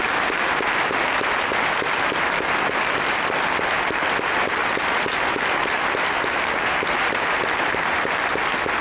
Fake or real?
real